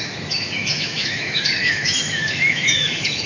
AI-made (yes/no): yes